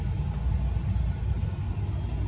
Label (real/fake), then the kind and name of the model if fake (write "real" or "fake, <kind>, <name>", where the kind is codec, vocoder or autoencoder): real